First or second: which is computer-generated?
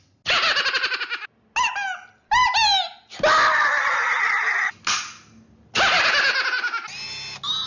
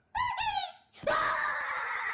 second